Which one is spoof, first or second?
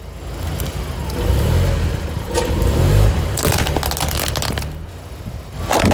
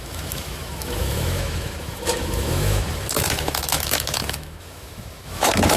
second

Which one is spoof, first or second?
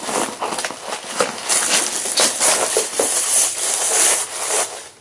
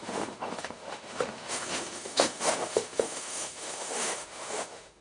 second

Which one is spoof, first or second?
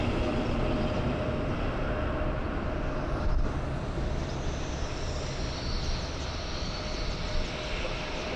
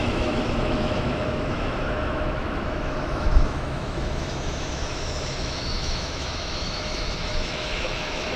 second